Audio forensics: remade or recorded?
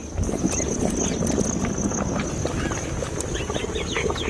recorded